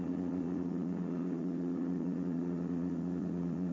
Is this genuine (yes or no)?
no